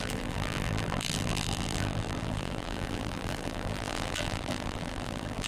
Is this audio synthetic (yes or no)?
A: yes